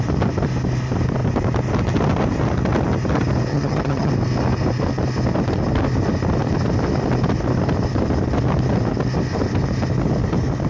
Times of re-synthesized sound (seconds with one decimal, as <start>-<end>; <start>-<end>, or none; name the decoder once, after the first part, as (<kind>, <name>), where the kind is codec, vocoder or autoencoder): 3.5-4.1 (vocoder, HiFi-GAN)